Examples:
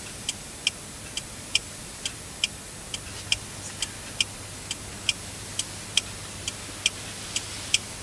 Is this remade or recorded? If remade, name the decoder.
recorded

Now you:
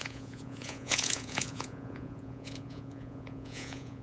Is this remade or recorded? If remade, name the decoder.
remade, vocoder, Vocos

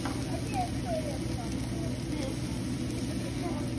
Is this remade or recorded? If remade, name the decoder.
recorded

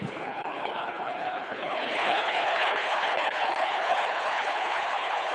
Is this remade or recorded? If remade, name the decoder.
remade, codec, HILCodec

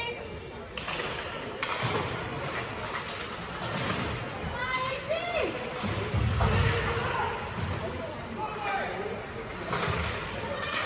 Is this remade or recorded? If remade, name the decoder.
recorded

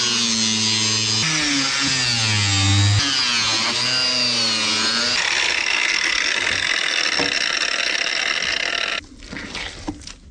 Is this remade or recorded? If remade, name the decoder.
recorded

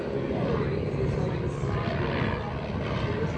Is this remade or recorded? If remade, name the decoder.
recorded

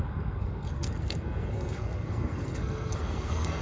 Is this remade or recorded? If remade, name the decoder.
remade, codec, SNAC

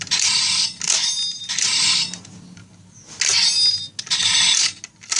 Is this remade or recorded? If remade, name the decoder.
recorded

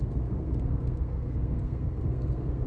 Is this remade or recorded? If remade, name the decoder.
remade, codec, SNAC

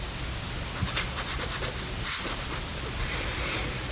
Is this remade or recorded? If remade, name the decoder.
remade, vocoder, BigVGAN v2